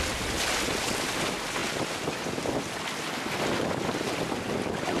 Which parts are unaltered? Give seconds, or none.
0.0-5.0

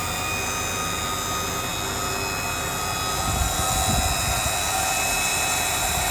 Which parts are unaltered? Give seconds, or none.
0.0-5.3

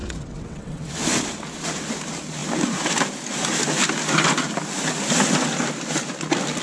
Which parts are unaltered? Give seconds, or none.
0.9-6.6